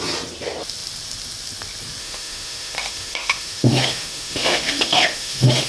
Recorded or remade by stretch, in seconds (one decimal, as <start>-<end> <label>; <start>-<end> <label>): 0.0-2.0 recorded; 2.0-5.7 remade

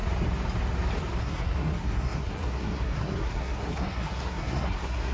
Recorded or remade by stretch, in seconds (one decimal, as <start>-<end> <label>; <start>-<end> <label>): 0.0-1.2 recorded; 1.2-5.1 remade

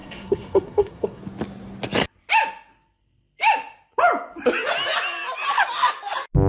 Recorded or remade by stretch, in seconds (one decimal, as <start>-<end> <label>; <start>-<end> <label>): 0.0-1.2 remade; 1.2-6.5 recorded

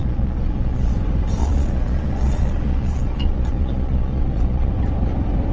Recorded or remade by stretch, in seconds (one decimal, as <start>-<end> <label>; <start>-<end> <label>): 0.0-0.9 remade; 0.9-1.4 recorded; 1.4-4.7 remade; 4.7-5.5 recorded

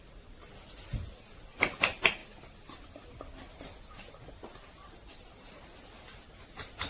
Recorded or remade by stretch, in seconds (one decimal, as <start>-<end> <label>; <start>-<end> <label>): 0.0-6.9 recorded

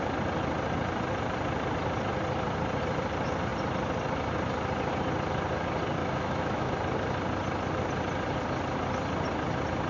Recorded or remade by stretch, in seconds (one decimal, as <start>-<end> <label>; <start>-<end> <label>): 0.0-6.0 recorded; 6.0-6.7 remade; 6.7-9.9 recorded

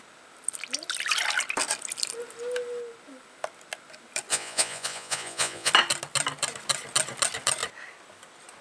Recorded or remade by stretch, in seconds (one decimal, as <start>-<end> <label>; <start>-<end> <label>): 0.0-4.3 recorded; 4.3-5.7 remade; 5.7-8.6 recorded

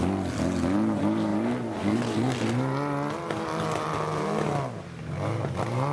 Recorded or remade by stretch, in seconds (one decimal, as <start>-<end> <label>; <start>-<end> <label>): 0.0-5.9 recorded